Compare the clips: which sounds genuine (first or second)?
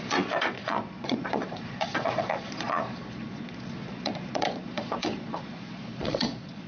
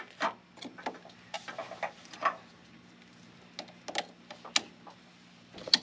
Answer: second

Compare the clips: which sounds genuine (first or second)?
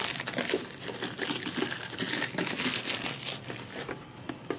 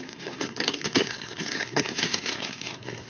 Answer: first